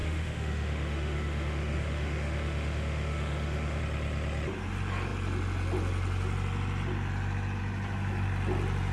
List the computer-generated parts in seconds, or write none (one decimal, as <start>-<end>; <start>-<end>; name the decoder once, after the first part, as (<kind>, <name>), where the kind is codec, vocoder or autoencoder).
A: 0.0-3.8 (autoencoder, DAC-VAE)